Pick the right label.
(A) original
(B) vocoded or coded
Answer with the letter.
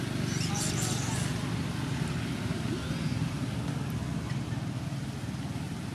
A